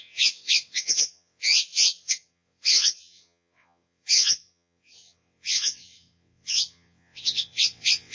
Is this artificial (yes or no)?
yes